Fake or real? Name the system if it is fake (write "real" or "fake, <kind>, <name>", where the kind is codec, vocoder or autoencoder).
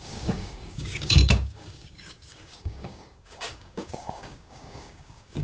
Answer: fake, codec, DAC